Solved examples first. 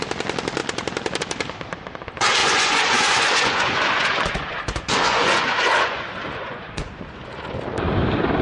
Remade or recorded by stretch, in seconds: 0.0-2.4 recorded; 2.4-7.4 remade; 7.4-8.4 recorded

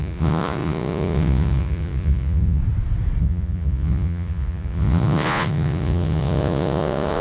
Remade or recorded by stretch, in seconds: 0.0-2.6 remade; 2.6-3.2 recorded; 3.2-7.2 remade

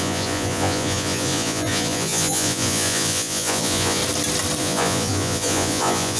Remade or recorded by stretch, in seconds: 0.0-4.0 remade; 4.0-4.6 recorded; 4.6-6.2 remade